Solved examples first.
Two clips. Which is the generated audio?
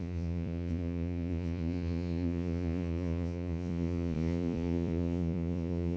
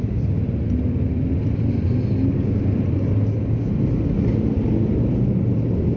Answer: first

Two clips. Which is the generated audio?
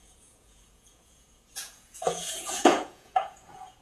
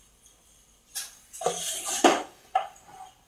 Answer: first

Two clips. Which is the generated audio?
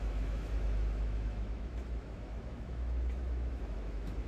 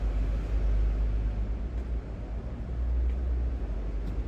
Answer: first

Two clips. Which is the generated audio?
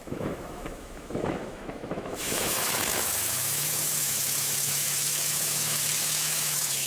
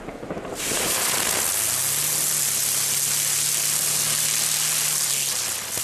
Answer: first